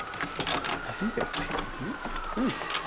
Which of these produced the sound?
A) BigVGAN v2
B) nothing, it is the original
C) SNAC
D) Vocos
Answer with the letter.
B